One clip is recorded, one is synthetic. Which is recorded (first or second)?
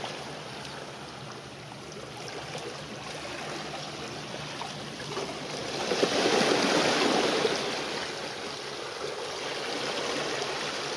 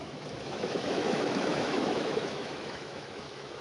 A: first